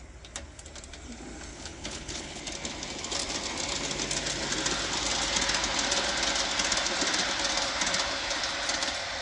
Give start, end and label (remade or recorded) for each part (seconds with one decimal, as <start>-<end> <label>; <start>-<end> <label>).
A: 0.0-1.5 recorded; 1.5-2.4 remade; 2.4-9.2 recorded